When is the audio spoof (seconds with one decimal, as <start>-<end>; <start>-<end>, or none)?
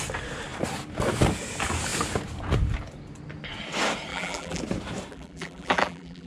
4.1-4.6; 5.1-6.3